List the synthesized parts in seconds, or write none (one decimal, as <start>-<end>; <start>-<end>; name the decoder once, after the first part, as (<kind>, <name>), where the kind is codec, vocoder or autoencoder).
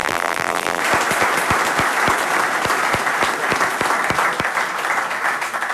0.0-0.8 (vocoder, BigVGAN v2)